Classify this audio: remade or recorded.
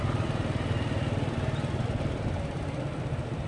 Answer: recorded